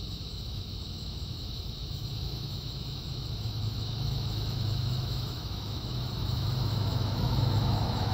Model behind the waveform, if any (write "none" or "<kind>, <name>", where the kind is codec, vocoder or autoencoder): autoencoder, DAC-VAE